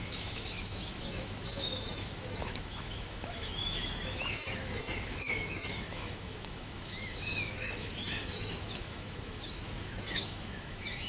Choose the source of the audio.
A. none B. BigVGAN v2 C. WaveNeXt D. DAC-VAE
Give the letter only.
D